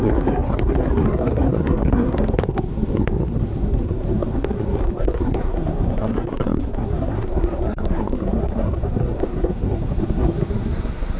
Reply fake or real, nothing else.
fake